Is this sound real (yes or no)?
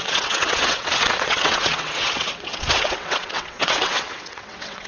no